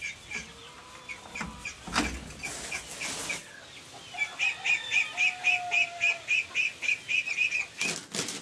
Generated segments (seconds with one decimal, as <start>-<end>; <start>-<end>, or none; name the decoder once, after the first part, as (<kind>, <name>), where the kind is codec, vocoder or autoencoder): none